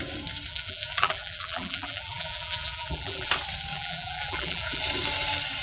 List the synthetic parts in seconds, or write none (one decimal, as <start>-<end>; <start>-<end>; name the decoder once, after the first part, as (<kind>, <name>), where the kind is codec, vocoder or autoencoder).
0.5-3.3 (vocoder, BigVGAN v2); 3.7-4.8